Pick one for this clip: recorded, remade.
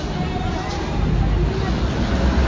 recorded